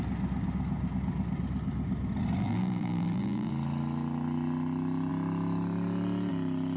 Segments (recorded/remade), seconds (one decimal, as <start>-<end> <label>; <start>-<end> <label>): 0.0-2.4 recorded; 2.4-3.5 remade; 3.5-6.8 recorded